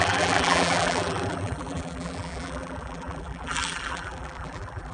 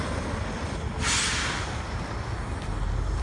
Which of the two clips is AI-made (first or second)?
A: first